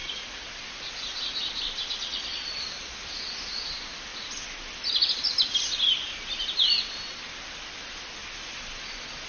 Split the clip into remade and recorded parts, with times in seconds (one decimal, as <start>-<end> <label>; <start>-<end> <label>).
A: 0.0-0.8 remade; 0.8-9.3 recorded